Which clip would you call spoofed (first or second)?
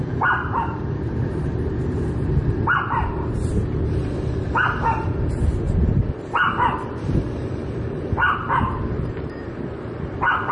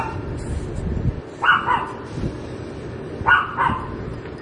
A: first